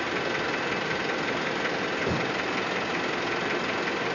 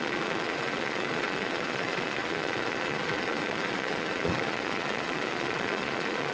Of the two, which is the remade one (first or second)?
second